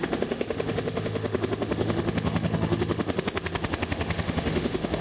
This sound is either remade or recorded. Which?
remade